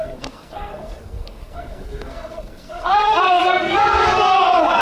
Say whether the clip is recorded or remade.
remade